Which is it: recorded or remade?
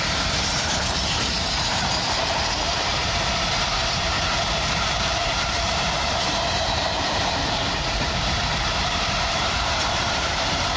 remade